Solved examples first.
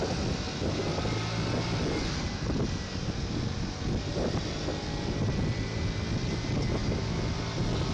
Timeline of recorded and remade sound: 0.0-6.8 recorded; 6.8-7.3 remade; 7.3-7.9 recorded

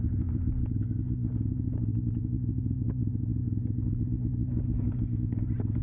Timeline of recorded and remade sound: 0.0-1.9 recorded; 1.9-3.0 remade; 3.0-5.8 recorded